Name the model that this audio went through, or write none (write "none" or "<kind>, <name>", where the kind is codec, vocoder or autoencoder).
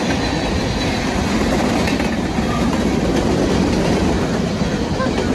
none